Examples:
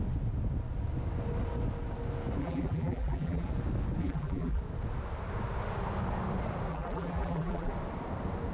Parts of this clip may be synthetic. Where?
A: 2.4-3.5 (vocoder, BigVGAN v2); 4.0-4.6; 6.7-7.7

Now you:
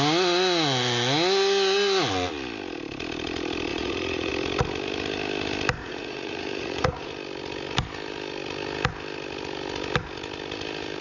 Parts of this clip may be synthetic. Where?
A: 3.7-4.3 (vocoder, Vocos); 5.8-7.1

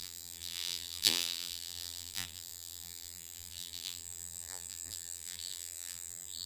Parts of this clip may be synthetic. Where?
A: 0.0-6.5 (vocoder, BigVGAN v2)